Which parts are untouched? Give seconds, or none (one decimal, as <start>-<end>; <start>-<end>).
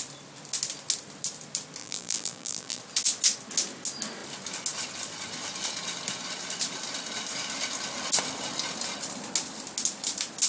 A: 0.0-1.8; 2.8-10.5